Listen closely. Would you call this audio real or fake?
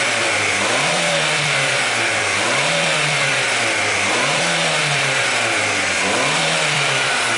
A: fake